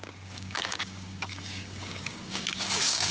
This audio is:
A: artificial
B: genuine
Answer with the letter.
A